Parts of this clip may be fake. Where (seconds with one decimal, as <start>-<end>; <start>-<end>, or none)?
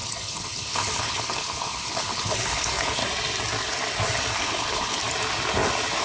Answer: 0.0-3.0; 4.3-5.0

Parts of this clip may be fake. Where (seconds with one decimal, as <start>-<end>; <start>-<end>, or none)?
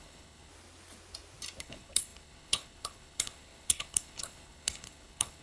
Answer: 0.0-0.5; 1.6-5.4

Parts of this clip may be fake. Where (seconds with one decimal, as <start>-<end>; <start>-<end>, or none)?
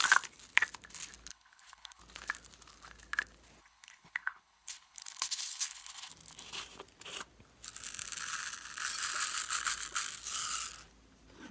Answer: 1.3-2.0; 3.6-6.1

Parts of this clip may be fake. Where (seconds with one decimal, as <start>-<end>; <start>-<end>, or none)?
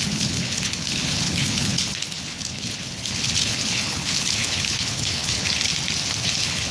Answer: 0.0-5.7; 6.2-6.7